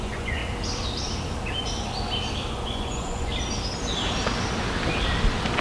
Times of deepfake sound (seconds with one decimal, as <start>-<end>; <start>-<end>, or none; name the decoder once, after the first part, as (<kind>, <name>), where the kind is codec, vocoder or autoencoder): 0.0-0.4 (vocoder, Vocos); 2.5-3.3